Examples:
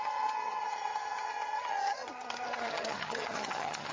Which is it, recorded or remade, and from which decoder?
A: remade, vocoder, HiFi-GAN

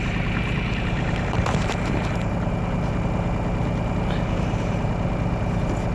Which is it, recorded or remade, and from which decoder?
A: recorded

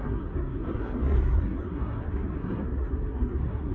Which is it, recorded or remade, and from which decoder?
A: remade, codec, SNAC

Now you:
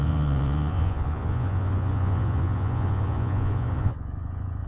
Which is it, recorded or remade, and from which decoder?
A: remade, vocoder, Vocos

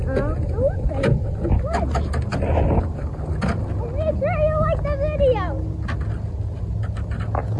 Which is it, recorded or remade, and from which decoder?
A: recorded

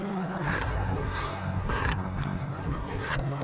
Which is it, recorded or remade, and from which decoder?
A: remade, codec, SNAC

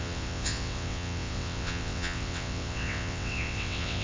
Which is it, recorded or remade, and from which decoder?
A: remade, vocoder, WaveNeXt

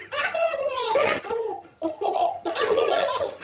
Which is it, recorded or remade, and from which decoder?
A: remade, vocoder, HiFi-GAN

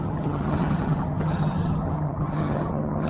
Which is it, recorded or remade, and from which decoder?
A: remade, vocoder, HiFi-GAN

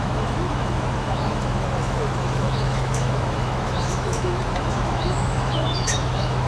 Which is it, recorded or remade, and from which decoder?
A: remade, autoencoder, DAC-VAE